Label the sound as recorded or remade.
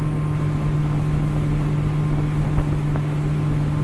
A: recorded